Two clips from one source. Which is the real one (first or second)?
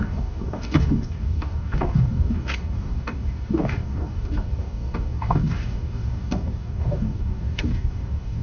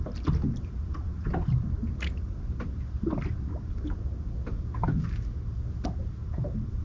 second